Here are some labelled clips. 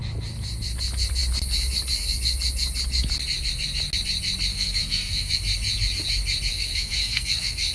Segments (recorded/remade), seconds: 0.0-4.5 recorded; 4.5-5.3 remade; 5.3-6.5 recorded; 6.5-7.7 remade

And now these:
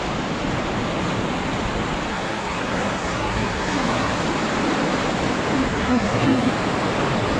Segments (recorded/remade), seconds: 0.0-2.1 recorded; 2.1-4.1 remade; 4.1-5.7 recorded; 5.7-6.5 remade; 6.5-7.4 recorded

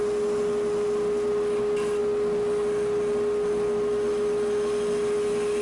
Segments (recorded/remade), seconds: 0.0-5.6 recorded

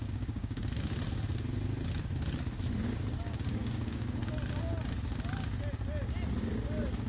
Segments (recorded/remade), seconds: 0.0-0.6 remade; 0.6-3.2 recorded; 3.2-4.3 remade; 4.3-7.1 recorded

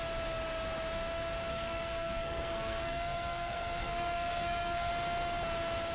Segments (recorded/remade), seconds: 0.0-1.5 recorded; 1.5-4.9 remade; 4.9-5.9 recorded

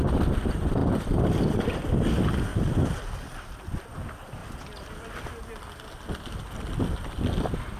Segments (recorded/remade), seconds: 0.0-0.8 remade; 0.8-1.6 recorded; 1.6-4.4 remade; 4.4-7.8 recorded

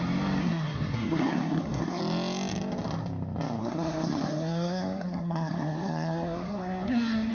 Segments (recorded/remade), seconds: 0.0-0.4 recorded; 0.4-2.0 remade; 2.0-3.6 recorded; 3.6-7.3 remade

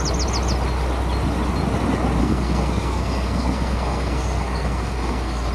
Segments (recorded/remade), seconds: 0.0-2.2 recorded; 2.2-5.5 remade